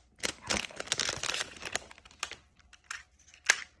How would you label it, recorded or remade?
recorded